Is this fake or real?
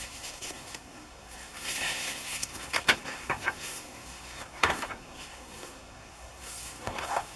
fake